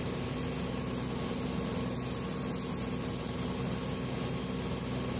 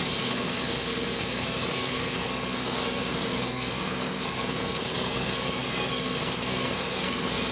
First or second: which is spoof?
second